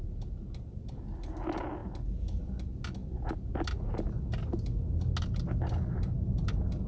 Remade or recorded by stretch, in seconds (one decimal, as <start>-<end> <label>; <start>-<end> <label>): 0.0-6.9 recorded